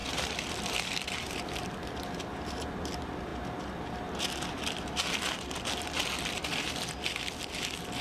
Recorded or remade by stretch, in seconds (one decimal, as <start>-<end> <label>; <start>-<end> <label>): 0.0-1.3 remade; 1.3-6.0 recorded; 6.0-7.4 remade; 7.4-8.0 recorded